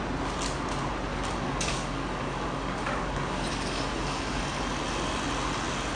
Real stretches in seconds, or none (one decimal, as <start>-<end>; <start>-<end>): 0.0-1.1; 4.4-6.0